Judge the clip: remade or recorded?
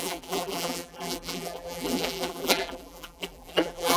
remade